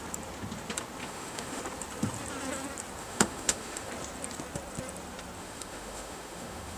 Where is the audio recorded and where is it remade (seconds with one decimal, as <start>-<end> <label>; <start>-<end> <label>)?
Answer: 0.0-1.0 recorded; 1.0-1.6 remade; 1.6-3.0 recorded; 3.0-3.9 remade; 3.9-5.4 recorded; 5.4-6.8 remade